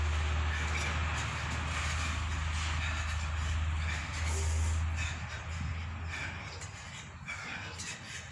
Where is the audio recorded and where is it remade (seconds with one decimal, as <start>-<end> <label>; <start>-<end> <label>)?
0.0-8.3 recorded